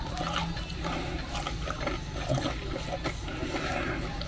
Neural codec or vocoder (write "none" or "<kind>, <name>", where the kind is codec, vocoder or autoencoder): none